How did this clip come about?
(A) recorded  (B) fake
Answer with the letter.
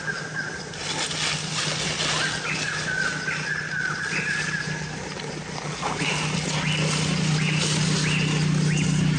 A